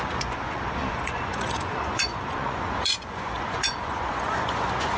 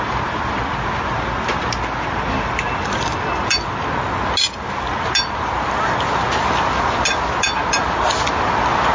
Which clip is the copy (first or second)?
first